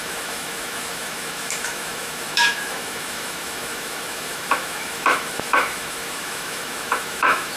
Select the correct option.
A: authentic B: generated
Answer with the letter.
B